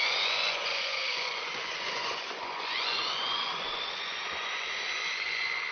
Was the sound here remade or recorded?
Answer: remade